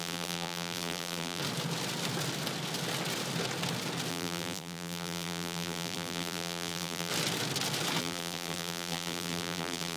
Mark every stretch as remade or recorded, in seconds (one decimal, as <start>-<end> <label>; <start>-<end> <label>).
0.0-1.4 remade; 1.4-4.1 recorded; 4.1-7.1 remade; 7.1-8.0 recorded; 8.0-10.0 remade